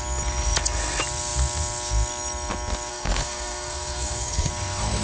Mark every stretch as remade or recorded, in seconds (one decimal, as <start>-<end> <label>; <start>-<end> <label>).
0.0-2.9 recorded; 2.9-4.5 remade; 4.5-5.0 recorded